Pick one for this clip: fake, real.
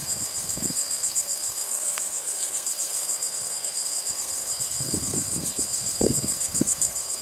fake